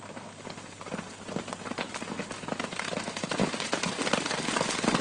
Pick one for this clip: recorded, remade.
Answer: recorded